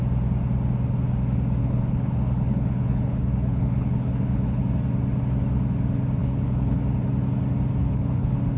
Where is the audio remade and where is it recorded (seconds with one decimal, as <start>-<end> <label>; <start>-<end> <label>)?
0.0-1.6 recorded; 1.6-4.6 remade; 4.6-6.2 recorded; 6.2-6.8 remade; 6.8-7.8 recorded; 7.8-8.6 remade